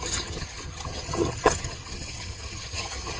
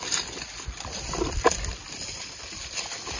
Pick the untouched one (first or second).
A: second